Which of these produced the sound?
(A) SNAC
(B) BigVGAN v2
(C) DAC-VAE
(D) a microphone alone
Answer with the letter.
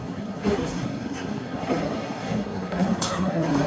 A